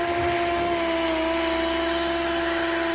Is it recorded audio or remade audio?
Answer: recorded